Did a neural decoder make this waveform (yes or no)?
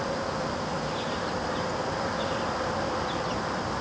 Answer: no